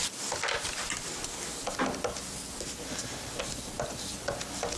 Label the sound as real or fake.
real